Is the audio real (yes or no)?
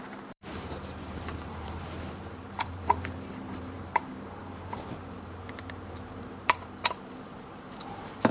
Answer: no